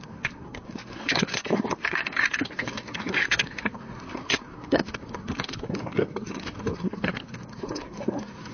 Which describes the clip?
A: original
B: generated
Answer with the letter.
B